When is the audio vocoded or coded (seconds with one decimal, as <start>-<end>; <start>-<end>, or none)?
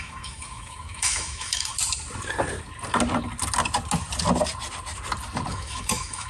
0.0-1.7; 5.5-6.3